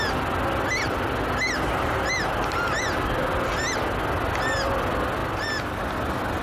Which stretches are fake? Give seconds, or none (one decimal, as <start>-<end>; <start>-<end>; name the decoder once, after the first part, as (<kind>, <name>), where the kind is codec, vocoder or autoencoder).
none